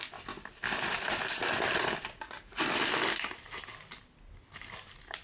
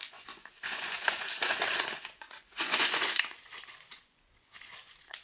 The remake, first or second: second